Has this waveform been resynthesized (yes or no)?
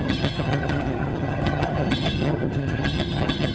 yes